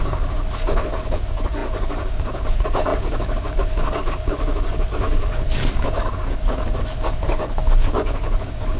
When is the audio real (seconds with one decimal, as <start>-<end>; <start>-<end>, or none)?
none